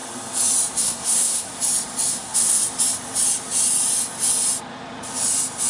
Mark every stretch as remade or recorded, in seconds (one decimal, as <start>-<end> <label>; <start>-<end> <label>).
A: 0.0-0.8 recorded; 0.8-1.5 remade; 1.5-2.1 recorded; 2.1-2.6 remade; 2.6-5.7 recorded